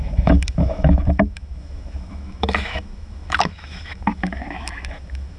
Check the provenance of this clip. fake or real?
fake